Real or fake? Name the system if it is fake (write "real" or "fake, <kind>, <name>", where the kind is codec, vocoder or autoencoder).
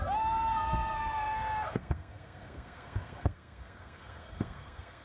fake, codec, SNAC